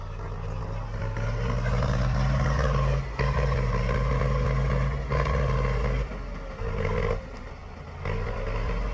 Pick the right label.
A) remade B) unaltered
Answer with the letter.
B